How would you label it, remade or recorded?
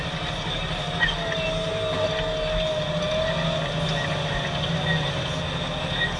recorded